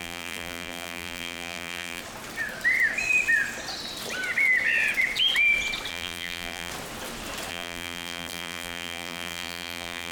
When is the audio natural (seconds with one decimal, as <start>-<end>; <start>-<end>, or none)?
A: 2.0-5.9; 6.7-7.5